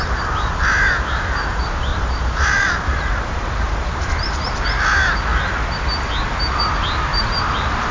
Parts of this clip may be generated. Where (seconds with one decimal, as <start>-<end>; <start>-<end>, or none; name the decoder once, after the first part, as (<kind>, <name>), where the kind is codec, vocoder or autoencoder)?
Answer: 1.9-4.4 (vocoder, BigVGAN v2); 7.1-7.9